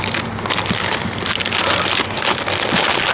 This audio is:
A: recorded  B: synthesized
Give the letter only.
A